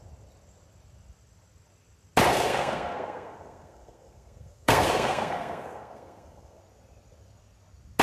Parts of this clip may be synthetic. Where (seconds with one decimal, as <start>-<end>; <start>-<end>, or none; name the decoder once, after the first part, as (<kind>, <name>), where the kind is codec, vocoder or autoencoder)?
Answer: 2.3-6.6 (codec, SNAC)